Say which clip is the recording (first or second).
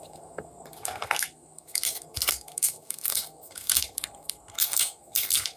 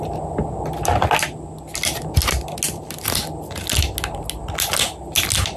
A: second